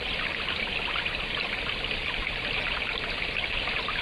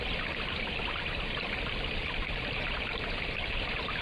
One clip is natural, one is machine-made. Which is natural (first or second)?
first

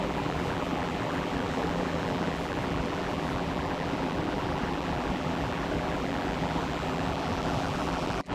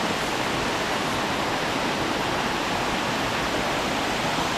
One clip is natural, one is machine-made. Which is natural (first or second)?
second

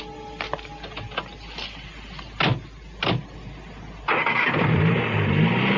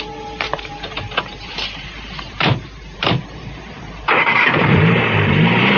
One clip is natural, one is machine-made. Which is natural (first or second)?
first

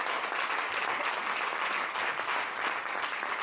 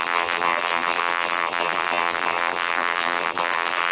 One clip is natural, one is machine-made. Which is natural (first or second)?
first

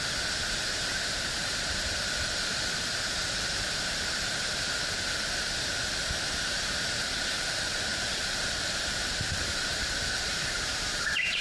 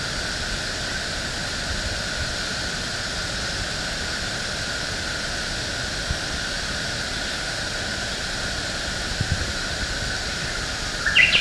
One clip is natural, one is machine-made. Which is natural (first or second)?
second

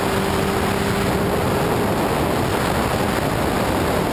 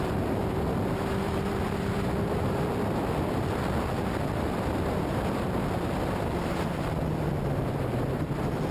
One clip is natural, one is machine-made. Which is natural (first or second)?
first